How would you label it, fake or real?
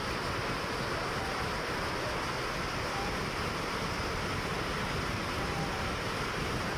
real